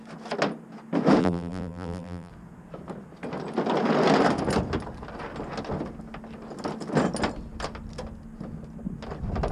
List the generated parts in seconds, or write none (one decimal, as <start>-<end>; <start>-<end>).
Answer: 1.2-2.3